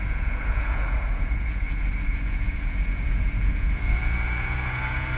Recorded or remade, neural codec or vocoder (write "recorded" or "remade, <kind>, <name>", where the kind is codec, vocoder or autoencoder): remade, vocoder, Vocos